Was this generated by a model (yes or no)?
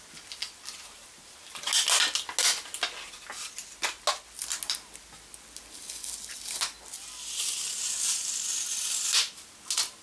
no